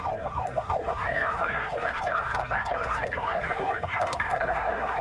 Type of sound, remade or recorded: remade